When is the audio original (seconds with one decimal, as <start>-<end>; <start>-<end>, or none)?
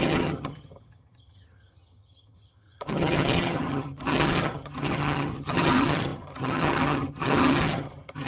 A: none